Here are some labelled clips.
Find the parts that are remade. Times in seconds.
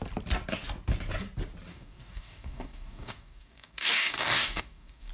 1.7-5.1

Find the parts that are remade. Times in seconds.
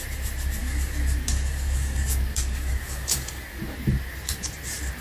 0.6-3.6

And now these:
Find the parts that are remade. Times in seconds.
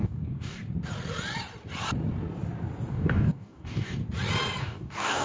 0.0-0.6; 2.9-4.0; 4.6-5.2